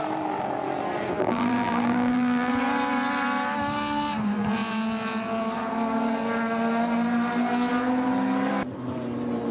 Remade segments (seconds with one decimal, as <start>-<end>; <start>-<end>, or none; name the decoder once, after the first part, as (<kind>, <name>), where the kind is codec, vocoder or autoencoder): 1.2-2.5 (vocoder, BigVGAN v2)